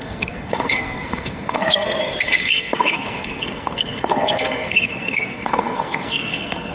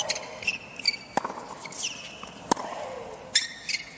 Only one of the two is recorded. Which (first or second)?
second